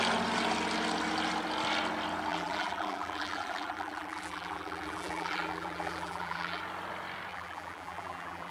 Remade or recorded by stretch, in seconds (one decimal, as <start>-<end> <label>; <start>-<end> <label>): 0.0-2.3 recorded; 2.3-6.6 remade; 6.6-7.3 recorded; 7.3-8.5 remade